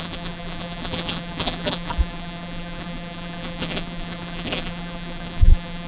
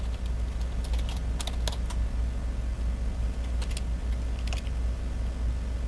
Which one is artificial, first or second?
first